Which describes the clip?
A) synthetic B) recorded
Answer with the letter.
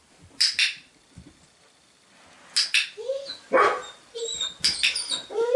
B